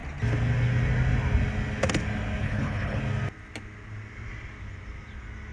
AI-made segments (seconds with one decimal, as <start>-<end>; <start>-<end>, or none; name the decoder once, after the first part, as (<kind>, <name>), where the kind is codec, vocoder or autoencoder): 2.4-3.0 (codec, HILCodec)